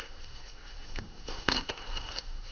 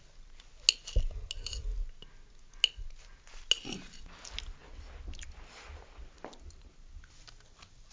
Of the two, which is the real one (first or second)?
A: second